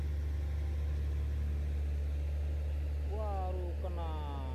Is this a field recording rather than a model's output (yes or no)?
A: yes